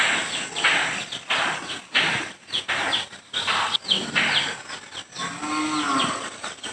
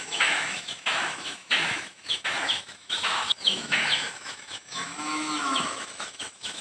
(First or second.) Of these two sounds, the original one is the first